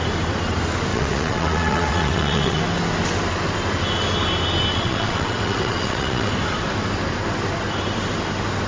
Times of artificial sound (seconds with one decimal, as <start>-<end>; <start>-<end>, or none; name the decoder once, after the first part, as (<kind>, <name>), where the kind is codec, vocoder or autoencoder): 0.9-2.6 (vocoder, WaveNeXt); 4.7-6.3